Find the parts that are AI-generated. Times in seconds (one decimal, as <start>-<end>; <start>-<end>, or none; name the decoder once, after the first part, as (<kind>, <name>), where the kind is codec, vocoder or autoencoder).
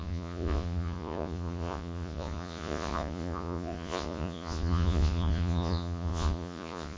0.0-7.0 (vocoder, Vocos)